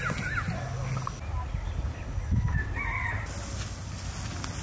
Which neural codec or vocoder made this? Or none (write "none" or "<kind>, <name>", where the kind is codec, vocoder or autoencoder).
none